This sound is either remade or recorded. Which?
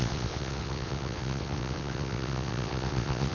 remade